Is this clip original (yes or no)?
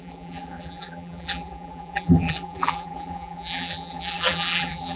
no